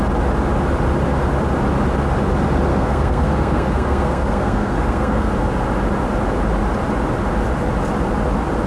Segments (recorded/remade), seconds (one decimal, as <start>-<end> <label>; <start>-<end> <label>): 0.0-2.7 recorded; 2.7-5.3 remade; 5.3-8.7 recorded